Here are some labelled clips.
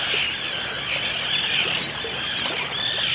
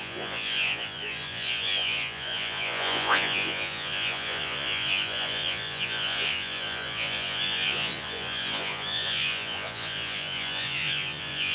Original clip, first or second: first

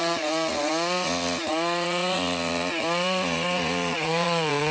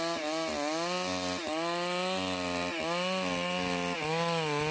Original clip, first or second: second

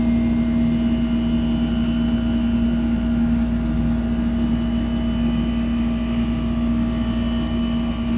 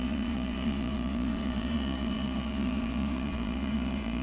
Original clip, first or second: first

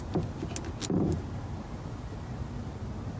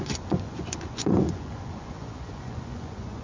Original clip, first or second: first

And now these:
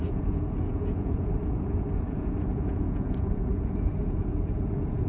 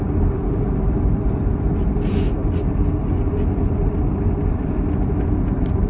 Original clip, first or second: second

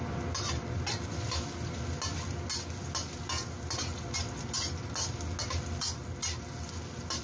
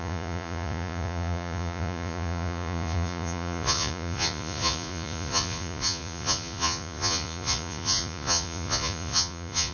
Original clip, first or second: first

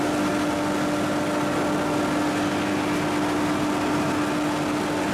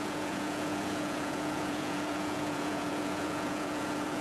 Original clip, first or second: first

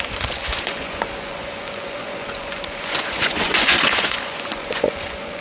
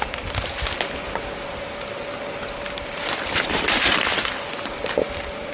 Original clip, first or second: second